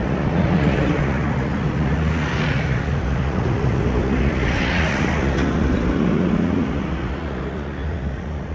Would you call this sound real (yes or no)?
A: no